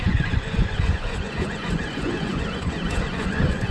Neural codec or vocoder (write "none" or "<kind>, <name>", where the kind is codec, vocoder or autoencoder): vocoder, Vocos